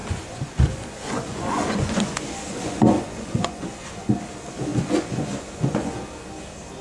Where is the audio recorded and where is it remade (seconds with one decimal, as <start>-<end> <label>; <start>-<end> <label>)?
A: 0.0-4.1 remade; 4.1-4.7 recorded; 4.7-5.9 remade; 5.9-6.8 recorded